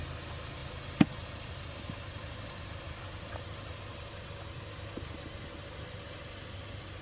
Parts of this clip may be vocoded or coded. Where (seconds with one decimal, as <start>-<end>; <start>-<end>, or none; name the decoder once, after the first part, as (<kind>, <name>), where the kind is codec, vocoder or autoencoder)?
none